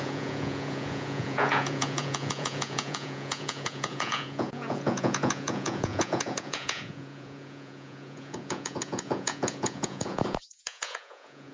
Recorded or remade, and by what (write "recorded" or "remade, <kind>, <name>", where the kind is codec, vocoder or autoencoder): remade, vocoder, Vocos